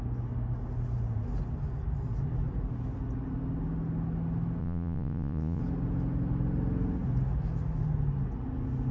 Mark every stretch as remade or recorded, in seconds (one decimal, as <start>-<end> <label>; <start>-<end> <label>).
0.0-4.6 recorded; 4.6-5.6 remade; 5.6-8.9 recorded